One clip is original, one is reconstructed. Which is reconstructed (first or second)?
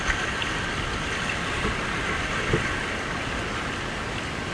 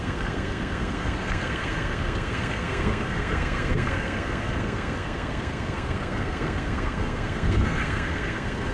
second